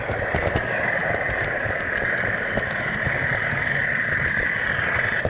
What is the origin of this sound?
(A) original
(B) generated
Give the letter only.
A